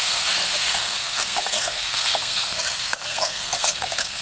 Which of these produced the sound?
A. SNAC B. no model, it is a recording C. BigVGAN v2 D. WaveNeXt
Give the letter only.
A